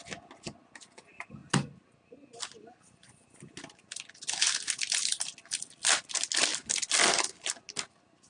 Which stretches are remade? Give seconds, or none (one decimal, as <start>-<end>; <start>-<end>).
none